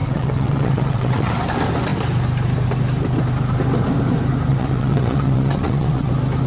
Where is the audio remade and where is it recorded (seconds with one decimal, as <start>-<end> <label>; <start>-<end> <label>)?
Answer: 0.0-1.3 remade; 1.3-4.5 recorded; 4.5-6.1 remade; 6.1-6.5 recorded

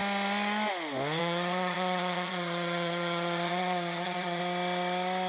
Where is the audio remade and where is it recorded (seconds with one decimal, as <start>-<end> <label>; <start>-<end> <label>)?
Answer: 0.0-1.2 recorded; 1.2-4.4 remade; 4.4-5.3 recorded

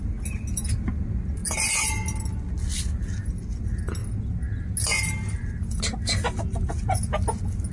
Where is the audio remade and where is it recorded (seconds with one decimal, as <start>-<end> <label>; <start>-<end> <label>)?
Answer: 0.0-7.7 recorded